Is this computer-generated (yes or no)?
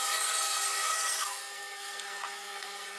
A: yes